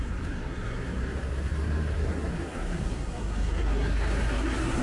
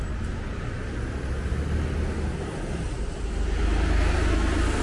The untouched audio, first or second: second